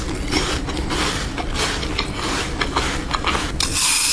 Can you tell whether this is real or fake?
real